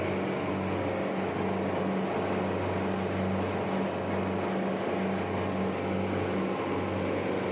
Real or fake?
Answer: real